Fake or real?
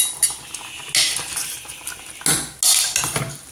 real